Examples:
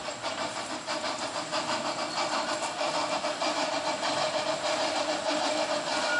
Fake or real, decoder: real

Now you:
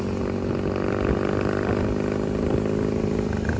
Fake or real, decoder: real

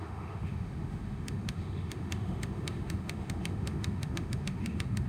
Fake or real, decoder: fake, autoencoder, DAC-VAE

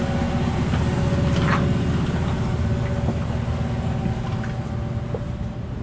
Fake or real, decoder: real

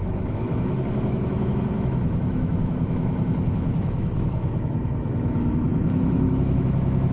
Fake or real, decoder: fake, autoencoder, DAC-VAE